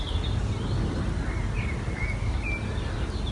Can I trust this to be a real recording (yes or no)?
yes